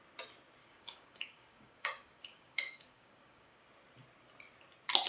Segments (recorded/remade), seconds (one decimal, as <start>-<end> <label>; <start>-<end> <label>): 0.0-0.6 recorded; 0.6-3.7 remade; 3.7-5.1 recorded